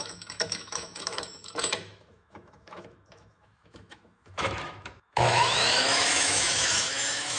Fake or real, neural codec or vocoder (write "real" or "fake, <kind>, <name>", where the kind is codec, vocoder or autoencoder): fake, autoencoder, DAC-VAE